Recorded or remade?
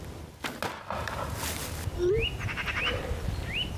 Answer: recorded